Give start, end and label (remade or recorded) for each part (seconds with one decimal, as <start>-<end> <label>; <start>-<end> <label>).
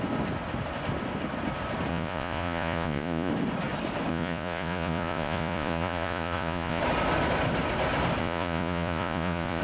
0.0-1.9 recorded; 1.9-3.3 remade; 3.3-4.1 recorded; 4.1-6.8 remade; 6.8-8.2 recorded; 8.2-9.6 remade